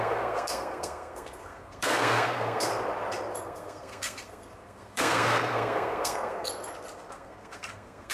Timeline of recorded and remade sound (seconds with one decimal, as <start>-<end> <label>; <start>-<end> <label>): 0.0-2.7 remade; 2.7-3.4 recorded; 3.4-6.5 remade; 6.5-7.1 recorded; 7.1-8.1 remade